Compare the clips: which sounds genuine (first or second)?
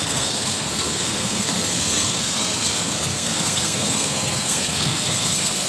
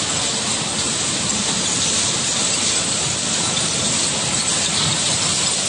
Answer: second